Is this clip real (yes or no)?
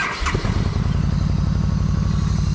yes